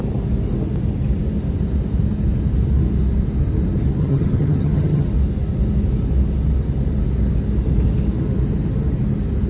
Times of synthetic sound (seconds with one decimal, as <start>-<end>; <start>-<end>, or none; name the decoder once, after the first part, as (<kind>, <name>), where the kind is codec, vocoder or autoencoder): 4.0-5.1 (vocoder, HiFi-GAN)